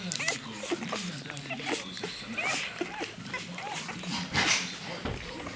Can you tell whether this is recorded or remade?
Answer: recorded